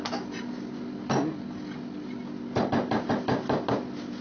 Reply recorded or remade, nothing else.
recorded